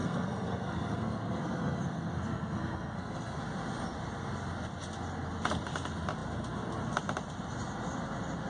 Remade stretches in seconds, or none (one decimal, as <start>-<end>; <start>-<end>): 0.0-3.4